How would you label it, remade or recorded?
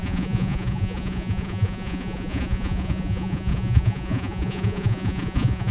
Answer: remade